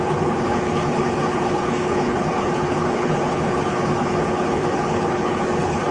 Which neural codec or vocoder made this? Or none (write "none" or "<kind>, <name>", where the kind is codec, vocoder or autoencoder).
codec, HILCodec